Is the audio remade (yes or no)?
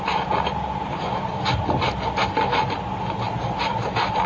no